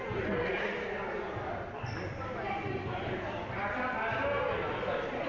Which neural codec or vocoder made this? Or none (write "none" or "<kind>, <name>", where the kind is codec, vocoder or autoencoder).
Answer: none